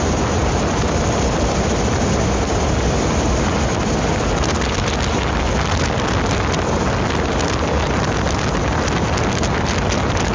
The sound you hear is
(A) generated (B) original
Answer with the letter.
B